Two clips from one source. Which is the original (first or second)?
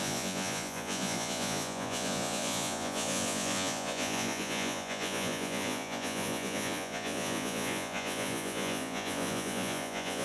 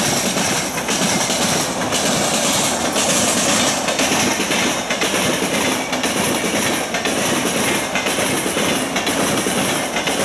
second